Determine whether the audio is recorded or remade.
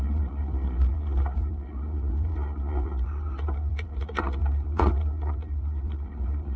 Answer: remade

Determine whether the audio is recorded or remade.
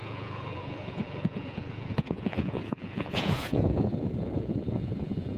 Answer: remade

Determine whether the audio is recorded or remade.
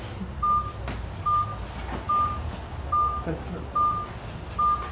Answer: recorded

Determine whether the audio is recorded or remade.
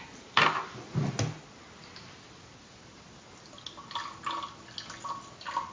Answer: recorded